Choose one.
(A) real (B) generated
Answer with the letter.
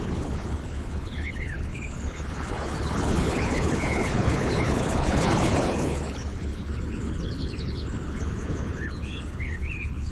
B